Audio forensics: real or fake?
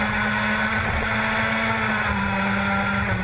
real